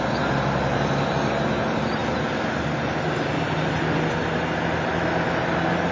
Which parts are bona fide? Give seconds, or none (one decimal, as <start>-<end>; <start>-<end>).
0.0-5.9